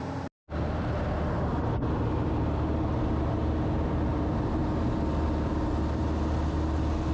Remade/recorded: recorded